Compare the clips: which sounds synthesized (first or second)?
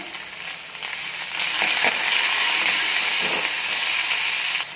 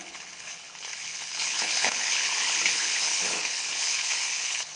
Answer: second